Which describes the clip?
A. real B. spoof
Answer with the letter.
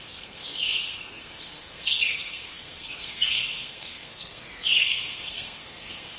B